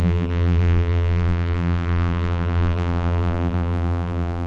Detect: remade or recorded remade